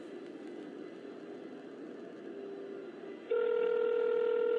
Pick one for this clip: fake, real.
real